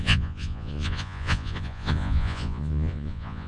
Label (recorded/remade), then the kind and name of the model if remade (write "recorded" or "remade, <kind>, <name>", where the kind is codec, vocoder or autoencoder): remade, vocoder, Vocos